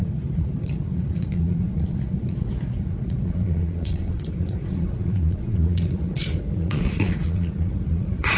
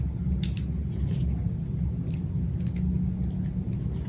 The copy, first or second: first